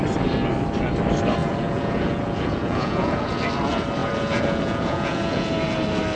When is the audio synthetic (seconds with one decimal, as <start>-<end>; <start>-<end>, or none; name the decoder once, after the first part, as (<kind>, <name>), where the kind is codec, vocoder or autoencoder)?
1.4-3.4 (vocoder, Vocos); 4.0-5.5